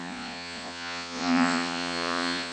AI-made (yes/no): yes